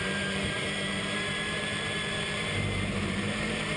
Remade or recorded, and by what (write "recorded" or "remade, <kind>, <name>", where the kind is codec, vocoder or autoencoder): remade, vocoder, BigVGAN v2